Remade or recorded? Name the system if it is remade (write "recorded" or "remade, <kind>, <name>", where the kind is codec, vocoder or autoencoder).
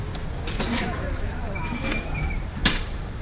remade, vocoder, BigVGAN v2